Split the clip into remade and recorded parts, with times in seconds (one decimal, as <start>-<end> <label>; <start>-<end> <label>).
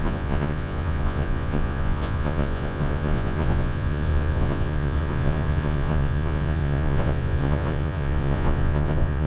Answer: 0.0-9.3 remade